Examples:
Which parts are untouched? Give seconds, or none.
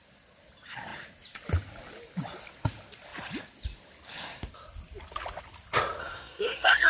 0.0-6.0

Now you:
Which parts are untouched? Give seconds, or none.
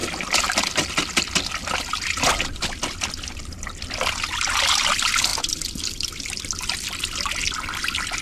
0.0-8.2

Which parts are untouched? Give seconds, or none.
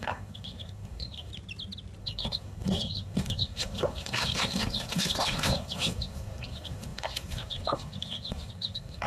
1.3-2.0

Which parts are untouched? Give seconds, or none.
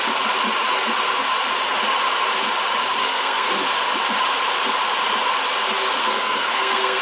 0.0-3.0; 3.5-6.0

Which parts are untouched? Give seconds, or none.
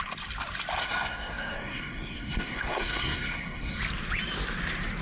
0.0-0.8; 3.8-5.0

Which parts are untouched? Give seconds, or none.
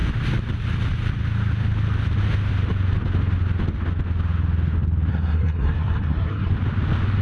0.0-5.1; 6.5-7.2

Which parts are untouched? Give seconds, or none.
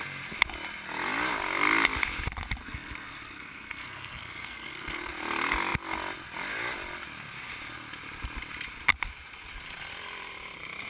0.0-2.6; 5.1-10.9